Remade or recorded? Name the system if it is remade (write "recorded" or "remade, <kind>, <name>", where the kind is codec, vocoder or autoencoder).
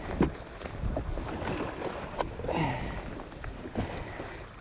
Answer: recorded